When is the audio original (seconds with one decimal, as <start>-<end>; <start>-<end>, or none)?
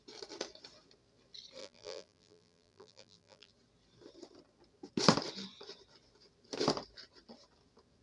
0.0-1.6; 3.5-8.0